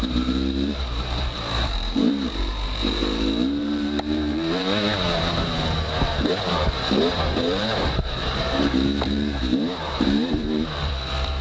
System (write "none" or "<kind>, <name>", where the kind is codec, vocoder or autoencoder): vocoder, BigVGAN v2